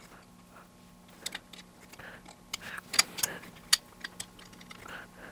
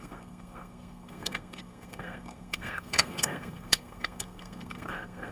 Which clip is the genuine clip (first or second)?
first